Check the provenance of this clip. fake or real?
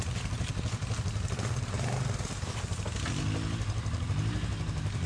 real